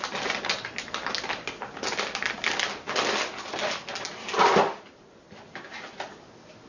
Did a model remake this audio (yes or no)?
no